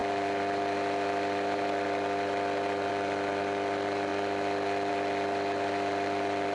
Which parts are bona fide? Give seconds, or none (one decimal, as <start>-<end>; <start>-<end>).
0.0-6.5